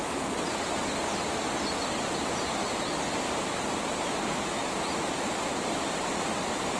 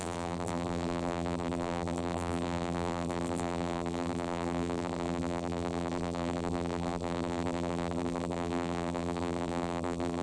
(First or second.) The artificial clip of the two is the second